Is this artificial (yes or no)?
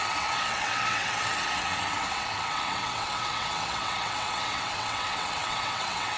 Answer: yes